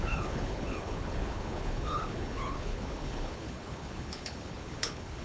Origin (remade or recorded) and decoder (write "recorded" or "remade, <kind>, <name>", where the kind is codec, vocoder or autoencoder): remade, codec, HILCodec